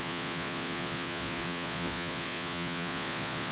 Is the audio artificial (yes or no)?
yes